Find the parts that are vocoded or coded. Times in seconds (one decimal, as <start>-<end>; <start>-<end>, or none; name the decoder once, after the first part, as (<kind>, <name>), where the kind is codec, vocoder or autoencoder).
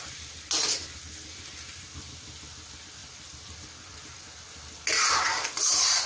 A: none